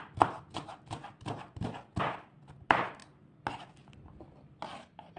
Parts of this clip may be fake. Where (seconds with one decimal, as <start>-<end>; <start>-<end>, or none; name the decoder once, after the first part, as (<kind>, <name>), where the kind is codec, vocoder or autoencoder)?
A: none